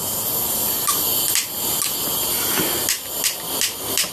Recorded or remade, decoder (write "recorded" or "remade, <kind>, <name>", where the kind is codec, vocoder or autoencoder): recorded